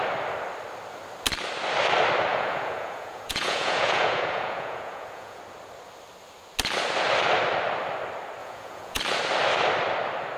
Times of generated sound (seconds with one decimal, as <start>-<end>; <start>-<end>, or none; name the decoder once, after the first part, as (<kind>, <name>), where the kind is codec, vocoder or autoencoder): 2.3-5.4 (vocoder, Vocos); 8.4-9.0